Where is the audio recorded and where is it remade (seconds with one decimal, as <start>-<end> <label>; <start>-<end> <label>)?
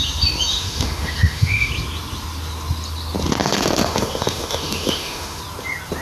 0.0-0.5 recorded; 0.5-1.7 remade; 1.7-3.4 recorded; 3.4-5.4 remade; 5.4-6.0 recorded